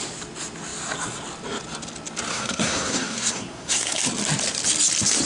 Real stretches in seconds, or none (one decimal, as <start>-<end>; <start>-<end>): 0.0-2.3; 4.0-5.3